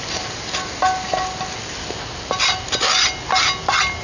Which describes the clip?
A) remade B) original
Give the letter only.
B